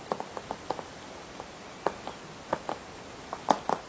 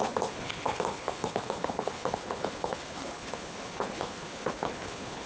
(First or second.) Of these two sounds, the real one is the first